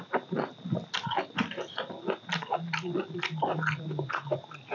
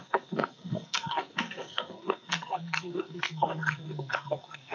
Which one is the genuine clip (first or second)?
first